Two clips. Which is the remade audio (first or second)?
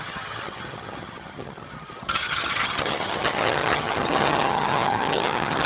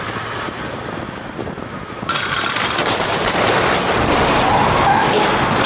first